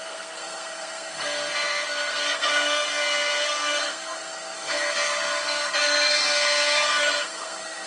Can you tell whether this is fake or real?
fake